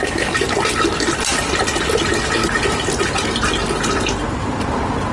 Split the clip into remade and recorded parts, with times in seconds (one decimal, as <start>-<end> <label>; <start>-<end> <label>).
0.0-5.1 recorded